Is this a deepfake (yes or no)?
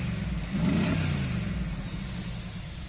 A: no